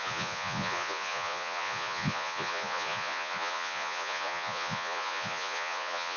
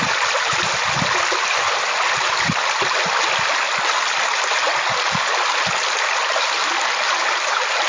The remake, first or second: first